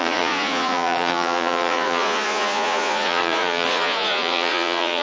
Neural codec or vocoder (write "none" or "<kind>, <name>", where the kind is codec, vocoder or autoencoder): vocoder, Vocos